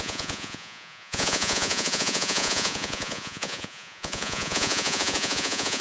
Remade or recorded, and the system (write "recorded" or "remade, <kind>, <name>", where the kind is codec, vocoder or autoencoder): remade, vocoder, Vocos